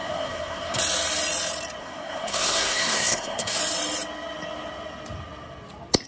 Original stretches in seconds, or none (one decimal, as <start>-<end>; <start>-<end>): 0.8-1.8; 3.6-6.1